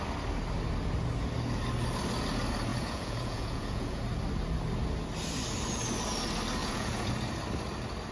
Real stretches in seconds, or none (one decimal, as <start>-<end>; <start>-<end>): 0.0-2.7; 4.0-6.6; 7.1-8.1